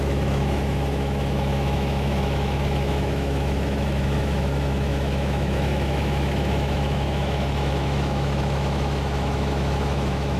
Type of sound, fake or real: fake